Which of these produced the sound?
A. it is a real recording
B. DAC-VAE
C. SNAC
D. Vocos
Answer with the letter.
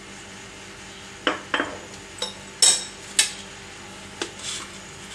A